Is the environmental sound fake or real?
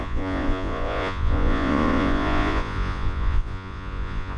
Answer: fake